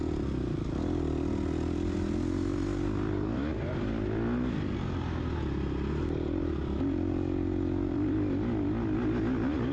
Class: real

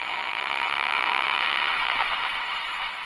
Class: fake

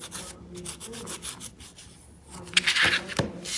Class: real